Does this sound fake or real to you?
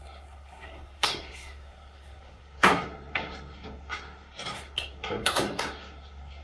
fake